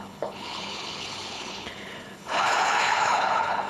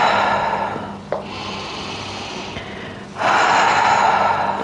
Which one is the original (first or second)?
second